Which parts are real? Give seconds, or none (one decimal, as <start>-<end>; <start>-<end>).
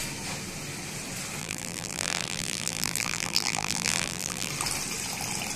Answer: 0.0-1.4; 4.5-5.6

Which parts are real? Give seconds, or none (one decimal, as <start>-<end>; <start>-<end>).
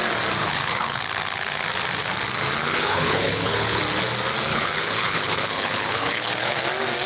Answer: 0.0-0.4; 1.0-2.6; 3.8-4.5; 6.6-7.1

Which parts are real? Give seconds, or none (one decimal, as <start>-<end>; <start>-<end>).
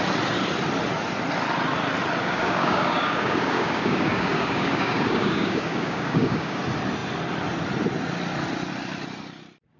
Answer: 0.0-2.2; 6.6-9.8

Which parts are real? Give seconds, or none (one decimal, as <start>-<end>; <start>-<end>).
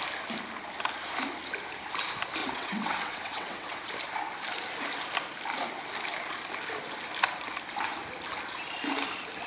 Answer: 0.0-2.4; 3.9-9.5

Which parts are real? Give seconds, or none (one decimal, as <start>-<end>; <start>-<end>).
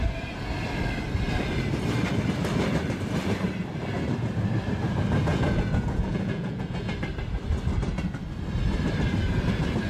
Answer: 0.0-5.3; 6.9-9.9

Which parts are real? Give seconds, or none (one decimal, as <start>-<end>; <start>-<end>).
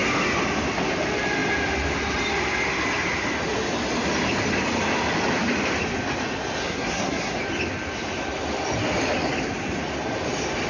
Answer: 0.0-6.6; 7.4-10.7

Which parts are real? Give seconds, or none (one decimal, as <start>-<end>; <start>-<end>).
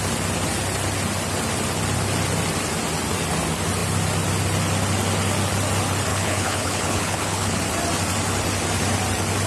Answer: 0.0-6.1; 7.6-9.5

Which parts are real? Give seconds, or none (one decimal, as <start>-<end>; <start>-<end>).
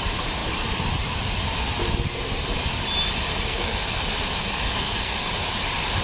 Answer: 0.0-3.3; 4.0-4.4; 5.3-6.0